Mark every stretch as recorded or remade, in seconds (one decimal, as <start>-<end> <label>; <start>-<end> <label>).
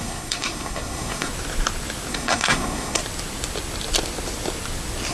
0.0-1.3 remade; 1.3-2.1 recorded; 2.1-3.0 remade; 3.0-5.1 recorded